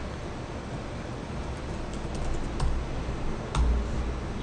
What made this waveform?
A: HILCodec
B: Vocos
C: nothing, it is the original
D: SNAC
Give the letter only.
C